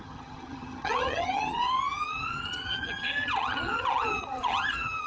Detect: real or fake fake